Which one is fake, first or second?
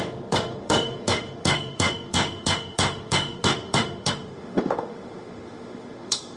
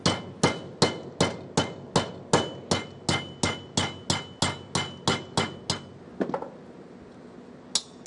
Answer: first